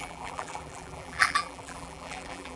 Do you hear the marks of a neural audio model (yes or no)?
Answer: yes